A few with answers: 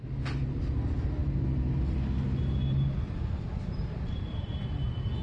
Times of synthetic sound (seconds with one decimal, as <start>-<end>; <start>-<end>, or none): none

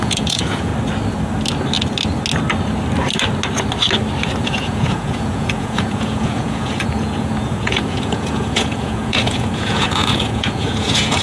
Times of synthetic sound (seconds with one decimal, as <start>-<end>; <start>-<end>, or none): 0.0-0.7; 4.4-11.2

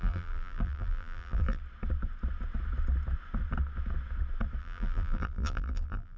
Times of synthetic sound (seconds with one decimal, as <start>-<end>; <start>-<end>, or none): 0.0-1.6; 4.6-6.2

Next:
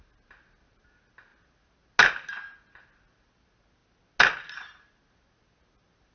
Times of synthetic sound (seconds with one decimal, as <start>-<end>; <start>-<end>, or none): none

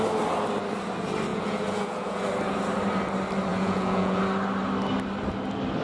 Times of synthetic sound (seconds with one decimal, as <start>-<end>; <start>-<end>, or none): 1.3-2.2; 3.5-4.2

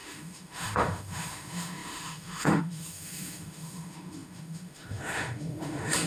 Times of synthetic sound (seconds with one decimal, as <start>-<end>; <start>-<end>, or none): 0.0-6.1